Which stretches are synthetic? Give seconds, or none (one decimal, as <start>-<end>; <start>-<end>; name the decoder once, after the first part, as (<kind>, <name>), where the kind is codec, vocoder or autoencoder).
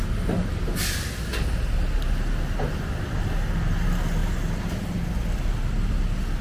none